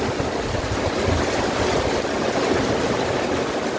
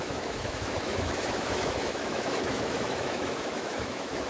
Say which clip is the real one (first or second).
first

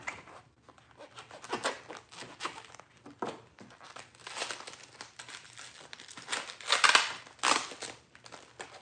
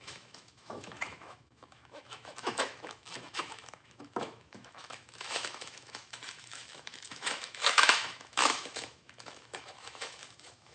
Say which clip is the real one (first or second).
first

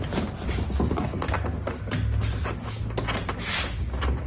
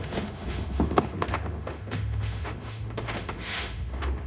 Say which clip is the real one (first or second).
first